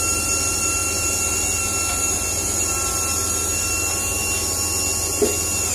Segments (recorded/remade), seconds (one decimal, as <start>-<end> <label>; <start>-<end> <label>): 0.0-5.7 recorded